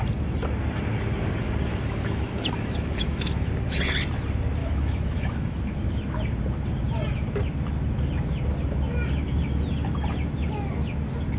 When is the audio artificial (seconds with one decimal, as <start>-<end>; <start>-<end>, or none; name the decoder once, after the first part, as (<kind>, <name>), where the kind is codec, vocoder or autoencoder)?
1.7-3.5 (autoencoder, DAC-VAE); 4.6-5.6

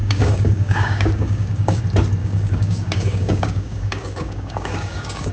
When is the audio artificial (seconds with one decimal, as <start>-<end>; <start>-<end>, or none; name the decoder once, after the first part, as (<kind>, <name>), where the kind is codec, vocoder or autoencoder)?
0.0-1.8 (codec, DAC); 2.2-5.3

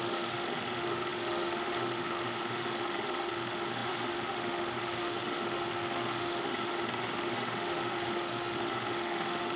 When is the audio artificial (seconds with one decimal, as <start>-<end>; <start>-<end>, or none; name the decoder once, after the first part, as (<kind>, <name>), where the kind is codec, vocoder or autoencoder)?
0.0-9.6 (autoencoder, DAC-VAE)

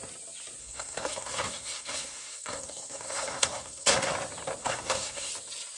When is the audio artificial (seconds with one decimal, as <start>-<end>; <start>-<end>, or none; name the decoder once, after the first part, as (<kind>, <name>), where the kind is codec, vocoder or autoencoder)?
0.6-4.1 (codec, SNAC); 4.6-5.3

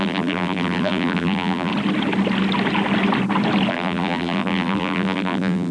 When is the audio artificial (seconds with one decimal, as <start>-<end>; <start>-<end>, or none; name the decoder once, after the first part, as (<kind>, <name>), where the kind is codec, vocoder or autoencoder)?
0.0-1.7 (vocoder, BigVGAN v2); 3.7-5.7

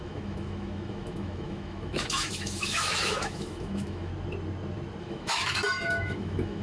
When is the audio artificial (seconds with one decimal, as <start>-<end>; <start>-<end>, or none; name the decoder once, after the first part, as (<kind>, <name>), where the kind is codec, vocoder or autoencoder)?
0.0-4.1 (autoencoder, DAC-VAE); 5.0-6.6